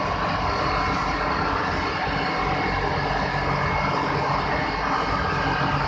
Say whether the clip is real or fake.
real